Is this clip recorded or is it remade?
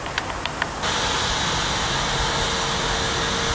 recorded